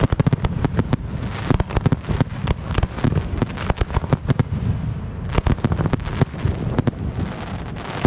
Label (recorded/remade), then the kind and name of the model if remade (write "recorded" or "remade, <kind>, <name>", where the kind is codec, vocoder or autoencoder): recorded